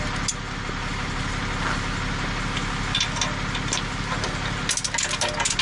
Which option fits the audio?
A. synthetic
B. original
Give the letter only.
B